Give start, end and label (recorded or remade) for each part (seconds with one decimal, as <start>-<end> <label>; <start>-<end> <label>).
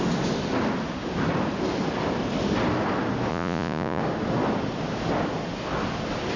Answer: 0.0-3.3 recorded; 3.3-4.0 remade; 4.0-6.4 recorded